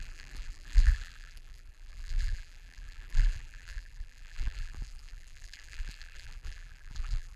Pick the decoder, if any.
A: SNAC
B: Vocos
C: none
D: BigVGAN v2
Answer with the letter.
D